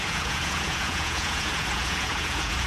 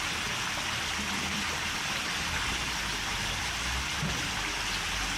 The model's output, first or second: first